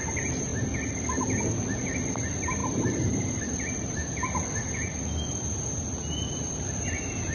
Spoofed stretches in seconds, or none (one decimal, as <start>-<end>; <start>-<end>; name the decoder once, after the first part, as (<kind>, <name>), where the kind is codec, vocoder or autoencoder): 0.0-0.5 (vocoder, BigVGAN v2); 1.8-4.0; 6.3-7.3